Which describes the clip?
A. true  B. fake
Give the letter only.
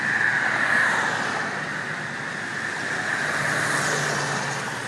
A